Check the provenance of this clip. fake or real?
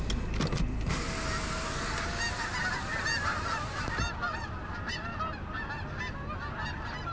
real